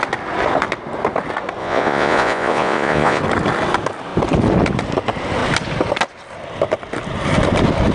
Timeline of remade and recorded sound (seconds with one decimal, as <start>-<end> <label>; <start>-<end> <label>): 0.0-1.6 recorded; 1.6-3.2 remade; 3.2-7.9 recorded